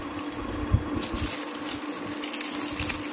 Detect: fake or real real